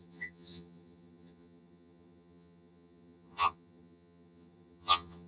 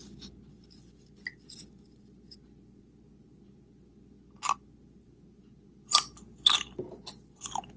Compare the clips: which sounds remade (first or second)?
first